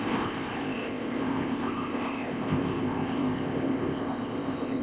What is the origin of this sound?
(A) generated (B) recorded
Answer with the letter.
A